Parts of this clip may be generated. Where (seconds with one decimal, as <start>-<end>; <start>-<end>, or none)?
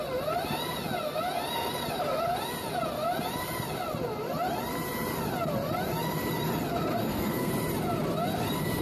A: 7.0-7.5